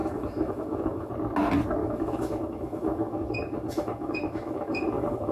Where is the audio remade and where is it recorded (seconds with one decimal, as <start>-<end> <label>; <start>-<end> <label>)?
0.0-1.1 remade; 1.1-1.8 recorded; 1.8-5.3 remade